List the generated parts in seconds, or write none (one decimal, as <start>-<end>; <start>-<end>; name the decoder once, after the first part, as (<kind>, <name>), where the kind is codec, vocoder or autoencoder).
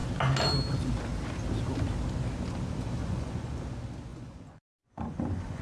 3.0-3.6 (vocoder, Vocos); 4.1-5.6